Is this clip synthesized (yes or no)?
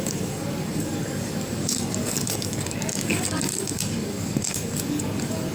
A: yes